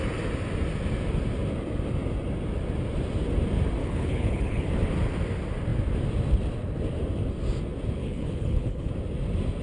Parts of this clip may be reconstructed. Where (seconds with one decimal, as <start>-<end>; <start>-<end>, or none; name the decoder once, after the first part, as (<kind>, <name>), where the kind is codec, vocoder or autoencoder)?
3.8-4.7 (codec, HILCodec); 8.0-8.9